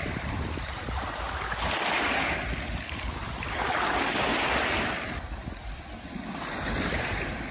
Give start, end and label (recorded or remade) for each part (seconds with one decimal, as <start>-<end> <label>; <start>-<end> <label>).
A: 0.0-7.5 remade